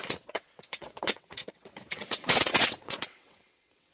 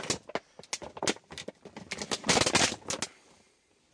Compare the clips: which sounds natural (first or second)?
second